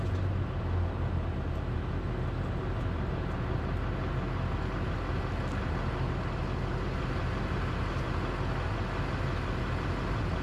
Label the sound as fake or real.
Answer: real